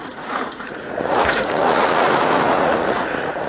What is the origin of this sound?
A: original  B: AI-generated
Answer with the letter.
B